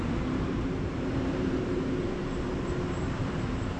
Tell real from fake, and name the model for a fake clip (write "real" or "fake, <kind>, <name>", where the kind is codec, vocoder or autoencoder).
fake, vocoder, BigVGAN v2